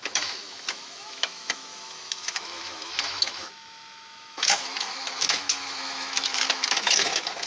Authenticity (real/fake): fake